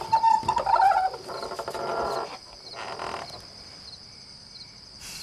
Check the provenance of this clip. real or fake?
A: real